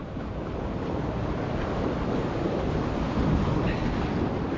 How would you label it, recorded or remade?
recorded